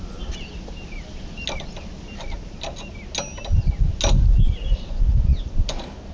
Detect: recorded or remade recorded